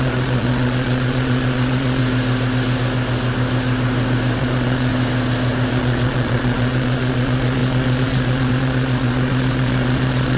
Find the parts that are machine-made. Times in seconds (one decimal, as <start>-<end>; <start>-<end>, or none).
0.0-2.0; 4.4-4.9; 5.7-10.4